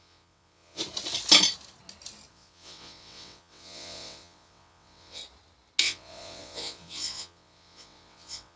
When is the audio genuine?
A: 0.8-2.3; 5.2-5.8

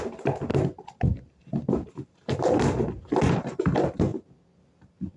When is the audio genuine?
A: 0.0-5.2

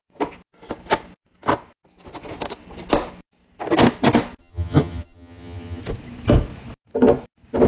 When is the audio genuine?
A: 0.0-4.4; 5.8-7.7

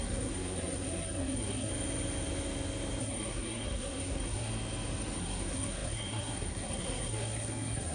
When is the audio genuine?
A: 1.7-3.0; 4.5-5.2

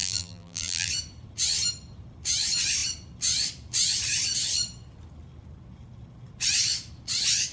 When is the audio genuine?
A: 0.9-7.5

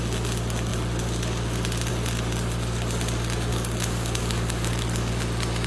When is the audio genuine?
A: 0.0-3.5; 5.1-5.7

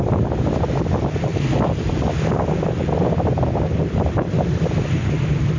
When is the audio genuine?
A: 0.0-5.6

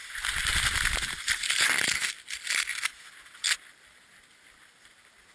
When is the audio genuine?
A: 0.0-5.3